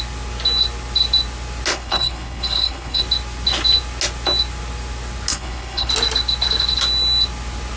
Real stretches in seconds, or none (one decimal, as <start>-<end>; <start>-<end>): 0.0-1.7; 3.0-5.3; 5.9-7.8